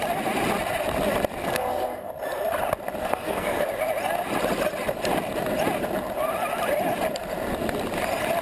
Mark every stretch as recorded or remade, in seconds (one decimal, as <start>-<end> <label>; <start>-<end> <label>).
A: 0.0-1.4 recorded; 1.4-2.1 remade; 2.1-3.0 recorded; 3.0-3.7 remade; 3.7-8.4 recorded